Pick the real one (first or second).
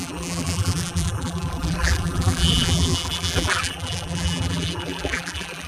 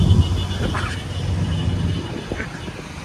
second